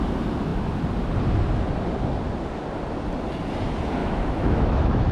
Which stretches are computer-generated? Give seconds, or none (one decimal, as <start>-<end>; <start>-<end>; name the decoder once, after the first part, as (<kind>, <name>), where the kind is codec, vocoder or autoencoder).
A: 4.0-5.1 (autoencoder, DAC-VAE)